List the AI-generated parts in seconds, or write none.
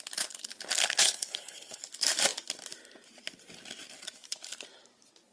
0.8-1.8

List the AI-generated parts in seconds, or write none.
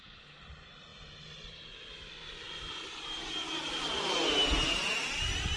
none